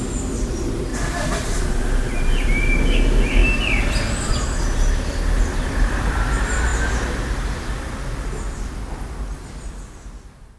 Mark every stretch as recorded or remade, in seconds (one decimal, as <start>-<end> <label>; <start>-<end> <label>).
0.0-0.9 recorded; 0.9-1.6 remade; 1.6-10.6 recorded

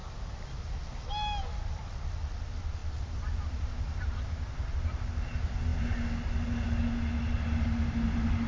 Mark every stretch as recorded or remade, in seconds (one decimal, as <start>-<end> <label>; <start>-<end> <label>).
0.0-2.8 recorded; 2.8-5.0 remade; 5.0-8.5 recorded

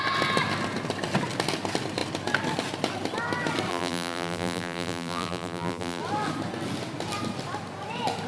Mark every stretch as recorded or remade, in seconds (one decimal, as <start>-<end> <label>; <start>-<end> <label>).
0.0-3.7 recorded; 3.7-6.0 remade; 6.0-8.3 recorded

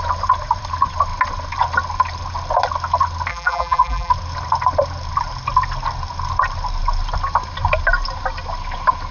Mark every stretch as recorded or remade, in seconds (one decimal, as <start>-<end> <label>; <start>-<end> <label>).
0.0-3.3 recorded; 3.3-4.1 remade; 4.1-9.1 recorded

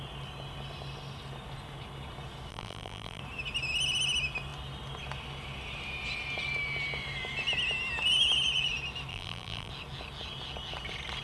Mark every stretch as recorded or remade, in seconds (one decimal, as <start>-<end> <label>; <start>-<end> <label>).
0.0-2.5 recorded; 2.5-3.2 remade; 3.2-9.1 recorded; 9.1-9.7 remade; 9.7-11.2 recorded

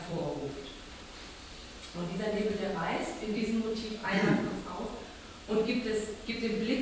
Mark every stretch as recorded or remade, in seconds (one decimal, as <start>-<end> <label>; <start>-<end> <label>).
0.0-1.6 remade; 1.6-2.3 recorded; 2.3-6.8 remade

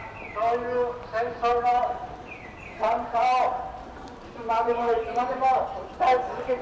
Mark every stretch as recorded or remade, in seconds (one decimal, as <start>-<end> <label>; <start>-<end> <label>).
0.0-1.7 recorded; 1.7-5.7 remade; 5.7-6.6 recorded

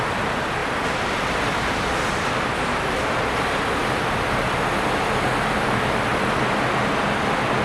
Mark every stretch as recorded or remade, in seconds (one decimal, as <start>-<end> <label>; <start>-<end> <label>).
0.0-7.6 recorded